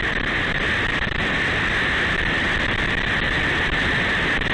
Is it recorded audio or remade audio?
recorded